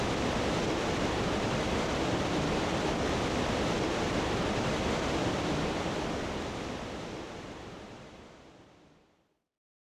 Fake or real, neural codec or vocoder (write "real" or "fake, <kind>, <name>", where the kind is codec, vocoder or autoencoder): real